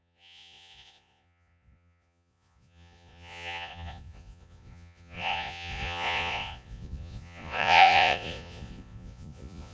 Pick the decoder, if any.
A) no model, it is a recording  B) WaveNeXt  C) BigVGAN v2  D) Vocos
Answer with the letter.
D